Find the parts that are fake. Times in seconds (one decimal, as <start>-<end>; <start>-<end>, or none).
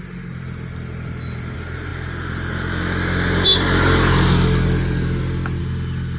none